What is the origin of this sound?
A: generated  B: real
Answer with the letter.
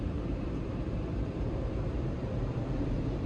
A